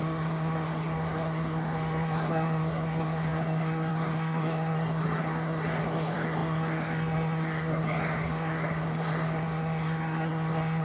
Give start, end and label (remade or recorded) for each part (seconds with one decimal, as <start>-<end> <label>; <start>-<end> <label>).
0.0-10.8 remade